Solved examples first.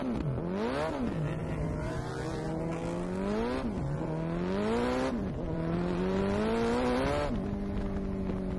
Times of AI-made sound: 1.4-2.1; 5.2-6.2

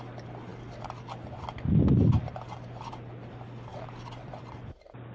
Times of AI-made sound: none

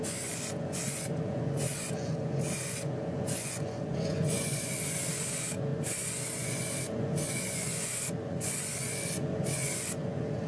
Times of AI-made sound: 0.0-10.5

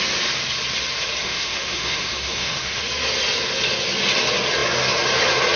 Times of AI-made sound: 1.2-2.8

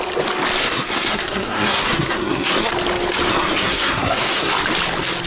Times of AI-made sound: 0.6-2.7; 3.3-4.5

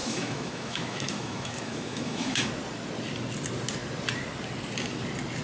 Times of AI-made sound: 0.0-2.5

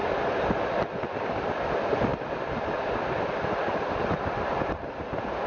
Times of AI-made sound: none